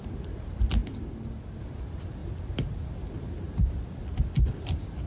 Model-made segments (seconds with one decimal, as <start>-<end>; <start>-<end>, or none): 2.2-4.0